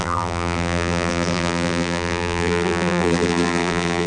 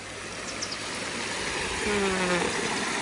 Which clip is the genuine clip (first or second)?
second